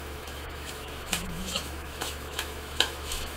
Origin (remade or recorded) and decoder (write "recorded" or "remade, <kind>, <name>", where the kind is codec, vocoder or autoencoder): remade, autoencoder, DAC-VAE